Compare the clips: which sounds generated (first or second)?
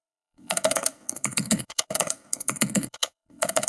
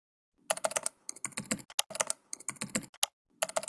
first